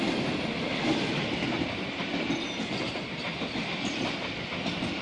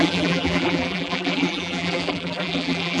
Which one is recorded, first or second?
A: first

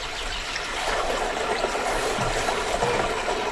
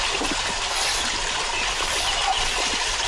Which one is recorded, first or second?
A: first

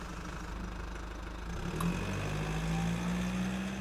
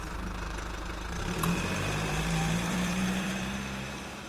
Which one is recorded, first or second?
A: first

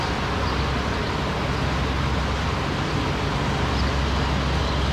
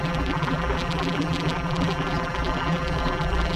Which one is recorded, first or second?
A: first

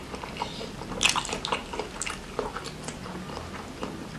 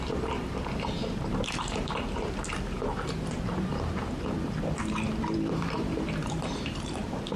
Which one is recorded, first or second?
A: first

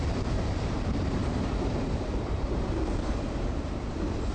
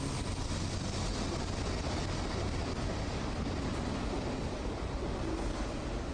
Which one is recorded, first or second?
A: second